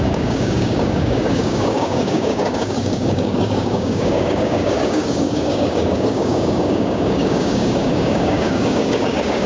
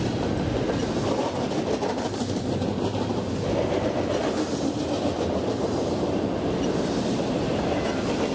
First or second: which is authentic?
second